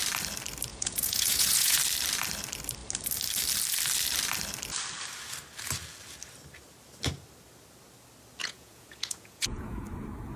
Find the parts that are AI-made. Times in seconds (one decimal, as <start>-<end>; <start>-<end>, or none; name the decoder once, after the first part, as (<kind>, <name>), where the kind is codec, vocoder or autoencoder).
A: 0.7-1.8 (vocoder, Vocos); 8.4-9.8